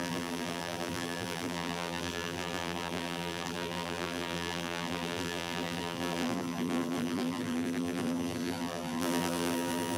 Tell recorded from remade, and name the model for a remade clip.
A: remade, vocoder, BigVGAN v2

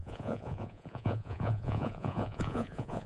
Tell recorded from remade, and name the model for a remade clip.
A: remade, vocoder, Vocos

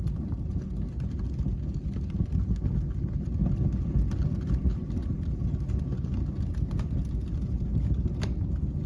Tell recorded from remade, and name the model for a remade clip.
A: recorded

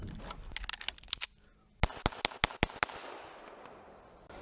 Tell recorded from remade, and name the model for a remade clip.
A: recorded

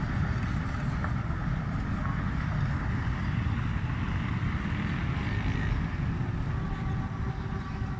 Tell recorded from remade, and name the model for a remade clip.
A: recorded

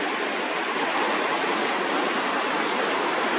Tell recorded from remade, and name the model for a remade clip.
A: recorded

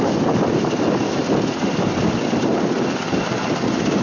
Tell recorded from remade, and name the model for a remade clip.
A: recorded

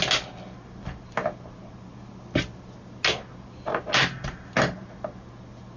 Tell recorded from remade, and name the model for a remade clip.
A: recorded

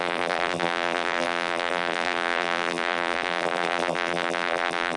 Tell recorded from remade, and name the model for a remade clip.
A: remade, vocoder, BigVGAN v2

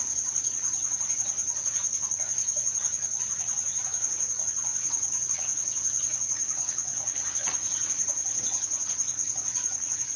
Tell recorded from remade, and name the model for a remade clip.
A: remade, vocoder, Vocos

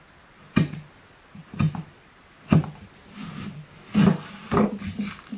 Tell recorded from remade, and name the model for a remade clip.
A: recorded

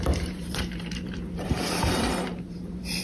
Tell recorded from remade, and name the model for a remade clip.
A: remade, vocoder, BigVGAN v2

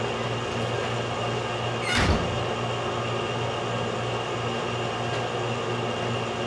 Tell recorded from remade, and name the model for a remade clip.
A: recorded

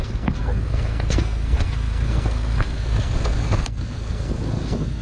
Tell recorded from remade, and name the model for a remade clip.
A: remade, codec, SNAC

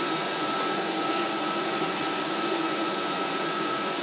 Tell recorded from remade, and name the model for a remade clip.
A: remade, vocoder, Vocos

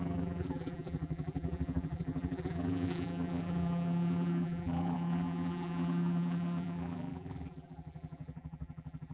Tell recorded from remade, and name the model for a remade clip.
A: remade, vocoder, BigVGAN v2